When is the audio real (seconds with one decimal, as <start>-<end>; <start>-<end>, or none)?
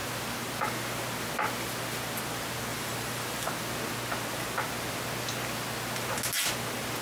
0.0-2.7; 3.5-7.0